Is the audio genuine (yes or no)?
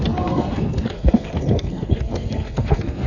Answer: no